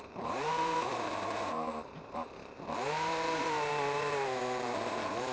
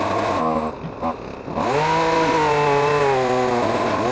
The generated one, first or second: first